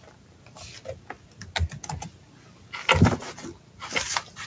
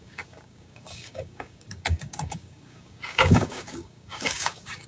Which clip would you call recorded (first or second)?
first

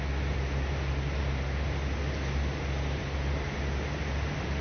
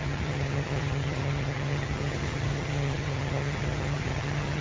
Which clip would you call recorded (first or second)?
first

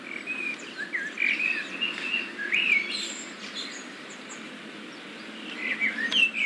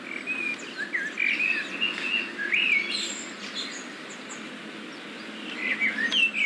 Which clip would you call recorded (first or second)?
second